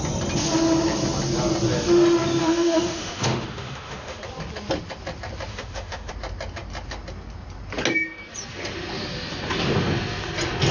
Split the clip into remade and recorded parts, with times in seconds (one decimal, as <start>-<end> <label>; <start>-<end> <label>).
0.0-2.4 recorded; 2.4-4.2 remade; 4.2-5.5 recorded; 5.5-6.1 remade; 6.1-10.7 recorded